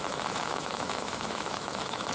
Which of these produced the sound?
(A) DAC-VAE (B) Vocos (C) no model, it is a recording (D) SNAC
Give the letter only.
A